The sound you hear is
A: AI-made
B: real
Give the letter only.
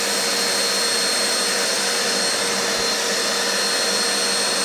B